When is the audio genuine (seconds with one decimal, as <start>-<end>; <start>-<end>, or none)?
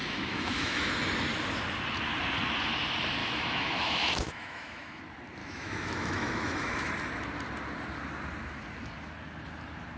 0.9-3.2; 5.0-5.4; 6.9-10.0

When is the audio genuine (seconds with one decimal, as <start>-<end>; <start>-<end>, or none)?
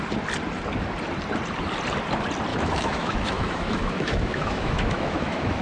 0.0-2.5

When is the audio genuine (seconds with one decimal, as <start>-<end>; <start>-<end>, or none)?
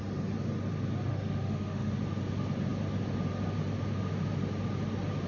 0.0-1.1; 1.9-5.3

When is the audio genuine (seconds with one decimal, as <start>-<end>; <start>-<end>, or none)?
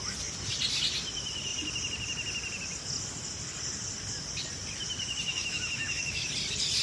0.0-5.3; 6.3-6.8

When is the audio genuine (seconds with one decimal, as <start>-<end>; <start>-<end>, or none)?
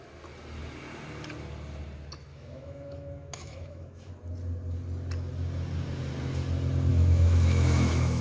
0.0-2.3; 4.1-6.9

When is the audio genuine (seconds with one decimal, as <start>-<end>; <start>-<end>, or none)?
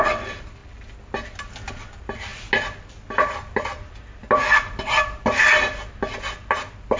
0.0-7.0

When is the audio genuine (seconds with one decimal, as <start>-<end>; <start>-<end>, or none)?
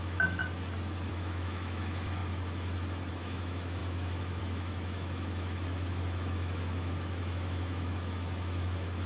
0.4-1.1; 2.2-3.1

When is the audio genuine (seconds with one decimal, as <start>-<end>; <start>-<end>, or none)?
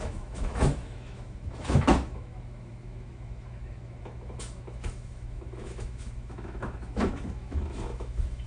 none